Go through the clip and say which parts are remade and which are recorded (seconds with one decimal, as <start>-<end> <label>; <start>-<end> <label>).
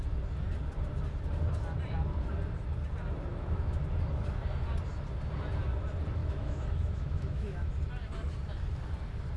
0.0-3.3 recorded; 3.3-3.8 remade; 3.8-6.2 recorded; 6.2-7.7 remade; 7.7-9.4 recorded